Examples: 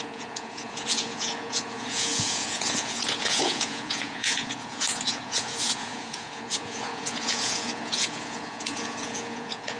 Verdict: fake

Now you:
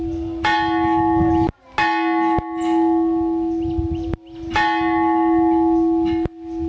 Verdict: real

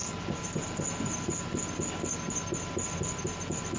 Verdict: real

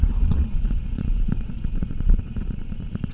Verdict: fake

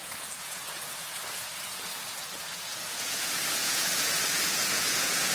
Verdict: fake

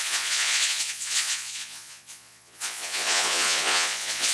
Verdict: fake